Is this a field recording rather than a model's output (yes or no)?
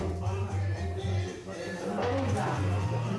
yes